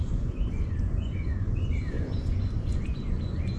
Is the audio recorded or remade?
remade